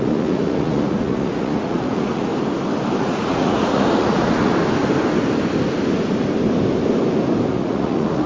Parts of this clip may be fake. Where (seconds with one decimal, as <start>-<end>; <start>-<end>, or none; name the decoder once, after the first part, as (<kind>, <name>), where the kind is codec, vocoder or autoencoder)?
0.0-2.3 (vocoder, Vocos); 3.0-4.5; 7.5-8.3